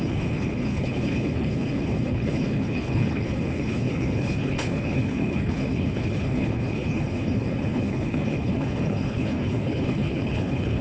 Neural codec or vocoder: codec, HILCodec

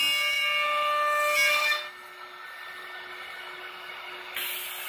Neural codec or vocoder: none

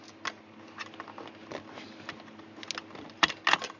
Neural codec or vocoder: none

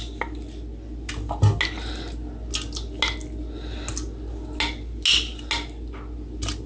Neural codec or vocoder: none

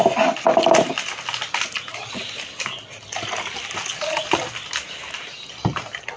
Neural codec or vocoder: none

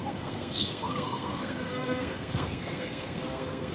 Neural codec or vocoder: codec, SNAC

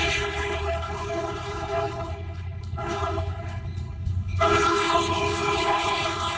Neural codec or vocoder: codec, HILCodec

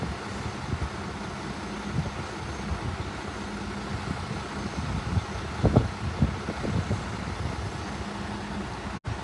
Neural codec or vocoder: none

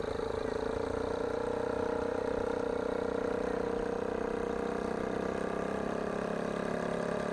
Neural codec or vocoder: none